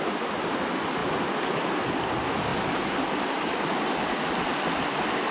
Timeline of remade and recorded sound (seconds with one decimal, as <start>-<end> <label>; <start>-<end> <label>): 0.0-5.3 recorded